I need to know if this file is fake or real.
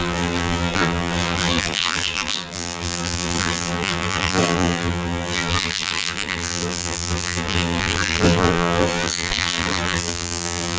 fake